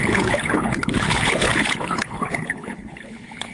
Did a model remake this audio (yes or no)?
yes